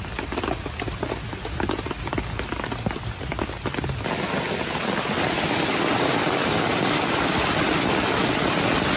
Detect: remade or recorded recorded